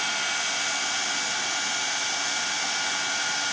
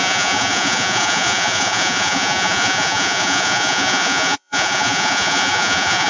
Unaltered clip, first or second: first